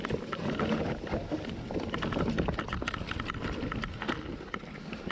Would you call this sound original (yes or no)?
yes